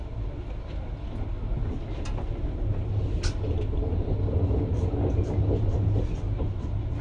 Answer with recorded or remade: recorded